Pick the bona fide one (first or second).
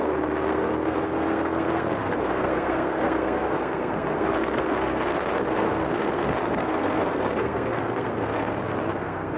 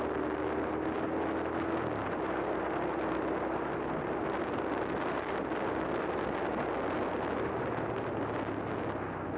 second